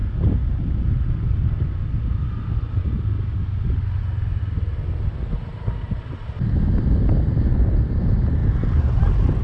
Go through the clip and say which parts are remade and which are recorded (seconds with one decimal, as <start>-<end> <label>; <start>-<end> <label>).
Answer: 0.0-9.4 recorded